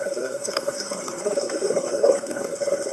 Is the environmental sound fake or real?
fake